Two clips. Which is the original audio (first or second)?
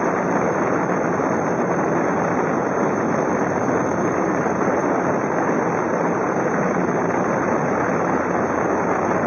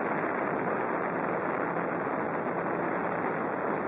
second